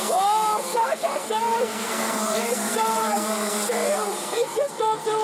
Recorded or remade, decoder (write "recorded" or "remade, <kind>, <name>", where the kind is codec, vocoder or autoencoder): remade, codec, SNAC